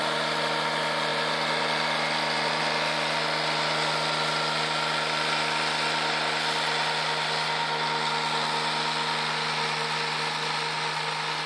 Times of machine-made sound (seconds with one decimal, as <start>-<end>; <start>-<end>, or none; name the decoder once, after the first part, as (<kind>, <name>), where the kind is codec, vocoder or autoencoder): none